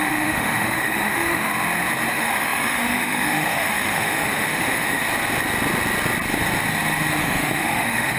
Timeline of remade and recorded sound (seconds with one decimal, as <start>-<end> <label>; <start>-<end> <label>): 0.0-1.5 remade; 1.5-2.1 recorded; 2.1-5.1 remade; 5.1-7.2 recorded; 7.2-8.2 remade